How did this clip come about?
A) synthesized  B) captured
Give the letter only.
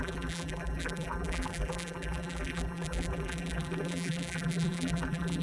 A